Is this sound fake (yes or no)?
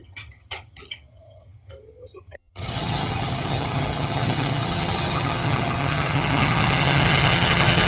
yes